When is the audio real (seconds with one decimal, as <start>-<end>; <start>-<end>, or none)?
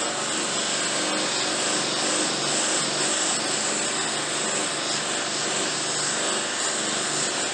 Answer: 0.0-7.5